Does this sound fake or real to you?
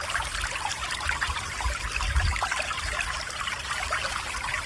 real